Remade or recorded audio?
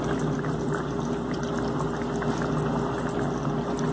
recorded